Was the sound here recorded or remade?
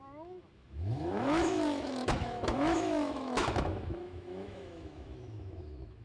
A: remade